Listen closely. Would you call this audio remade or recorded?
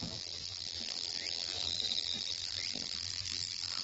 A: remade